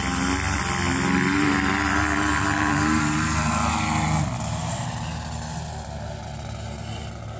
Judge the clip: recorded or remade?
recorded